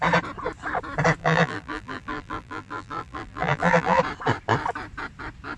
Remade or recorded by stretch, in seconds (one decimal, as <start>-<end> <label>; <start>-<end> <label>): 0.0-1.2 recorded; 1.2-4.0 remade; 4.0-5.6 recorded